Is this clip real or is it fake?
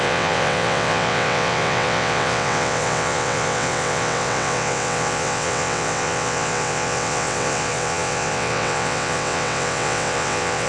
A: fake